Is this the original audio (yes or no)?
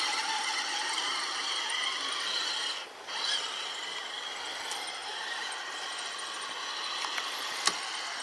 yes